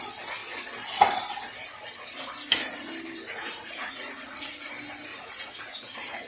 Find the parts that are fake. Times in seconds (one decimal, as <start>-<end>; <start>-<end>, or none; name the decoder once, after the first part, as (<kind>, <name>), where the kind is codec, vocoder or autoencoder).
3.4-4.5 (vocoder, Vocos); 5.1-6.3